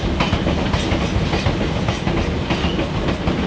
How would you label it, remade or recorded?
recorded